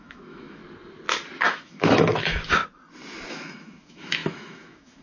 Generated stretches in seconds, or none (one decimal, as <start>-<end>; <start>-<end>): 0.0-0.6; 1.4-2.6; 3.3-5.0